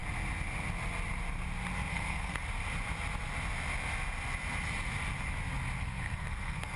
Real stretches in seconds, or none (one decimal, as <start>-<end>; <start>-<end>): 0.0-1.9; 2.4-5.8